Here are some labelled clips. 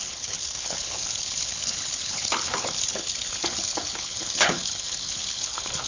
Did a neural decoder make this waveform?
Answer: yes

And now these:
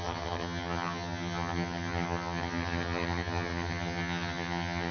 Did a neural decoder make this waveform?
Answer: yes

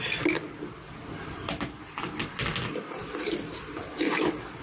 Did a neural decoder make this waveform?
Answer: no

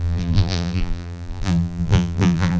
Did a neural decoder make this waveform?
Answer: yes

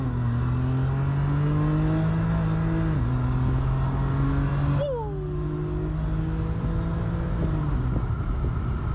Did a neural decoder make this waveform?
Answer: no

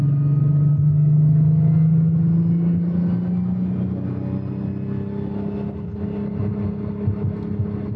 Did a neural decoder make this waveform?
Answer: no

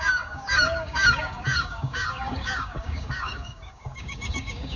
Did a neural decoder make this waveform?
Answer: yes